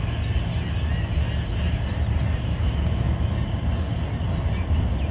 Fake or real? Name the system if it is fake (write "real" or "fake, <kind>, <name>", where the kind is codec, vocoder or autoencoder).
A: real